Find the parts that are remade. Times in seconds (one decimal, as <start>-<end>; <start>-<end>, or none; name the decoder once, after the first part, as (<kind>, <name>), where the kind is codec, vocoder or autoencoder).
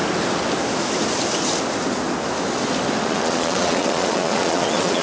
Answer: 3.0-5.0 (vocoder, Vocos)